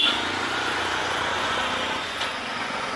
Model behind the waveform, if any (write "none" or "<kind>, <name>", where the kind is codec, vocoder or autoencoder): vocoder, Vocos